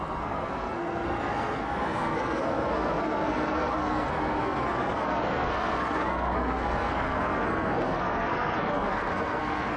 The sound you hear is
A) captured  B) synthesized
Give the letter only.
B